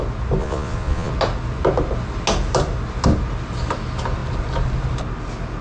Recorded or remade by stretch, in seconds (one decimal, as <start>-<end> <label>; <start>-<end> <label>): 0.0-0.4 recorded; 0.4-1.1 remade; 1.1-5.6 recorded